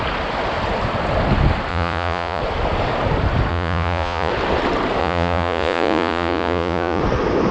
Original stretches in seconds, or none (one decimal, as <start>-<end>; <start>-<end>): 0.0-1.7; 2.4-3.5; 4.3-5.0; 7.0-7.5